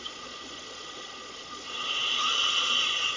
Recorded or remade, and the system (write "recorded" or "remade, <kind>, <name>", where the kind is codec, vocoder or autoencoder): remade, vocoder, Vocos